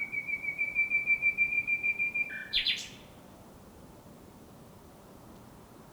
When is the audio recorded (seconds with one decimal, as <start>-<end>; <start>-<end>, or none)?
0.7-1.5